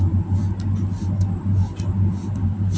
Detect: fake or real real